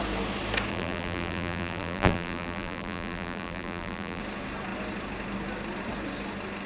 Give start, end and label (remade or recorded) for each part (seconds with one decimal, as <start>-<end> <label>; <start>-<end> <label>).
0.0-0.7 recorded; 0.7-4.2 remade; 4.2-6.7 recorded